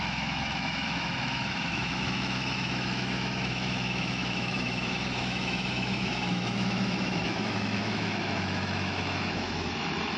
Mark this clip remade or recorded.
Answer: remade